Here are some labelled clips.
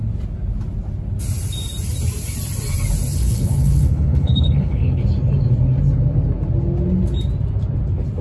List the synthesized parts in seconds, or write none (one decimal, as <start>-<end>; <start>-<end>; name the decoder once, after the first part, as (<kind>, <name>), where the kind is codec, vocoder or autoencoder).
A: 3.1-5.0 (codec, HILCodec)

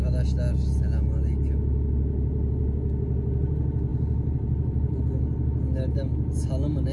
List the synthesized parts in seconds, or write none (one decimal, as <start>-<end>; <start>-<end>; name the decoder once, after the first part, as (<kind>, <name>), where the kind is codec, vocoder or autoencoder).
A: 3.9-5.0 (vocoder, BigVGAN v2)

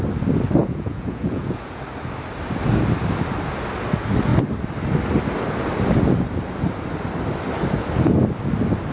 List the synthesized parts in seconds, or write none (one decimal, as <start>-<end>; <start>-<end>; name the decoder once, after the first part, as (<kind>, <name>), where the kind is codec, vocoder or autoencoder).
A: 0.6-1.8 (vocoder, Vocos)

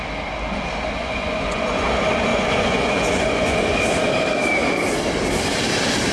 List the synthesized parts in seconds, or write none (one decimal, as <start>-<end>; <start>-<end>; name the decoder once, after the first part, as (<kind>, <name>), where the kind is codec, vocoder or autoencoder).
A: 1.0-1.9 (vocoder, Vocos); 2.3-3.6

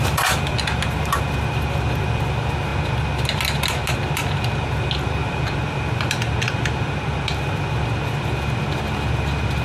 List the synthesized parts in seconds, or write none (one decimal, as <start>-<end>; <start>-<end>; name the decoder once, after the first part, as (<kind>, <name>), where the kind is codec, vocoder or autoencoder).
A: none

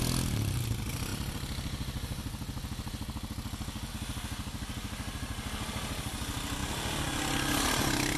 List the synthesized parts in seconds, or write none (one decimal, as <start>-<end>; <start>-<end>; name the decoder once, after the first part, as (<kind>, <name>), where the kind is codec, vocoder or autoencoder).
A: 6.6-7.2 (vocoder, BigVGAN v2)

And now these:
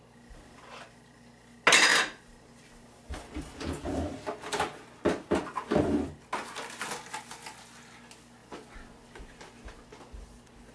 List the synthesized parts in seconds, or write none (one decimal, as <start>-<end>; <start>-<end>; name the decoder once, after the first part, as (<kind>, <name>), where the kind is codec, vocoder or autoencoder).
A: none